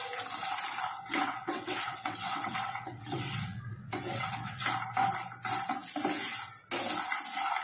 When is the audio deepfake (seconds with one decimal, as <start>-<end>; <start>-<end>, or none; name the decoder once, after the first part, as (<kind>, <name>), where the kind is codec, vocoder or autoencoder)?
1.1-4.6 (vocoder, WaveNeXt)